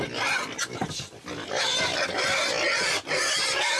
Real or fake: real